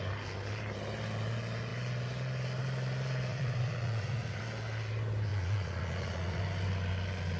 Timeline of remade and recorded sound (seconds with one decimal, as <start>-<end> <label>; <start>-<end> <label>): 0.0-3.3 recorded; 3.3-4.4 remade; 4.4-5.3 recorded; 5.3-6.4 remade; 6.4-7.4 recorded

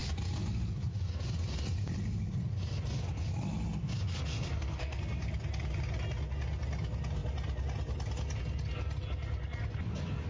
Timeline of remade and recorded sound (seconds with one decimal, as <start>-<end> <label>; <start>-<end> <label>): 0.0-4.3 recorded; 4.3-5.0 remade; 5.0-10.3 recorded

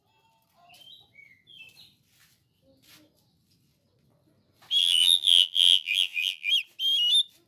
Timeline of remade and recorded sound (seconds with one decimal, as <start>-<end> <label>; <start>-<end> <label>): 0.0-4.8 recorded; 4.8-6.5 remade; 6.5-7.5 recorded